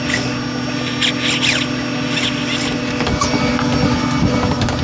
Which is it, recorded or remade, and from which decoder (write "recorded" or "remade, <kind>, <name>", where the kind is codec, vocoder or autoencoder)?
recorded